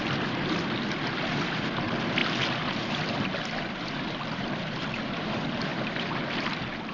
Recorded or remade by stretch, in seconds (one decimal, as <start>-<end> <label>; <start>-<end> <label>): 0.0-6.9 recorded